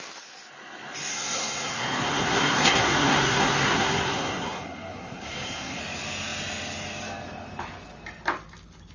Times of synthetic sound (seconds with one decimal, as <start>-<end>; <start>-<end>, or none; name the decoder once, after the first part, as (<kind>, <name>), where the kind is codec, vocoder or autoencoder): 1.1-5.8 (codec, SNAC)